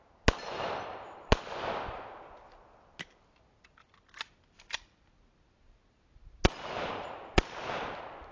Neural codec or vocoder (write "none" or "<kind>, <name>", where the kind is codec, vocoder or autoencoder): none